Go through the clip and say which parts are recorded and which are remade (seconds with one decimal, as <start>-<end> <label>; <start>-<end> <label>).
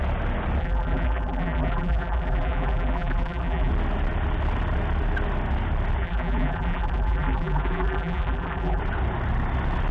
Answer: 0.0-0.6 recorded; 0.6-3.7 remade; 3.7-6.0 recorded; 6.0-8.8 remade; 8.8-9.9 recorded